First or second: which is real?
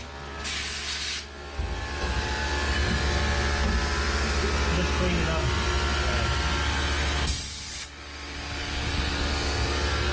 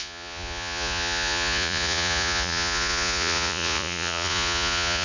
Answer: first